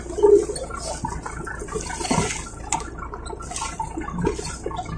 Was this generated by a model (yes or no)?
no